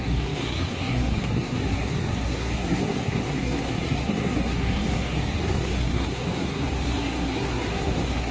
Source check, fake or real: fake